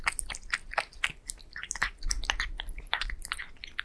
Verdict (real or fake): real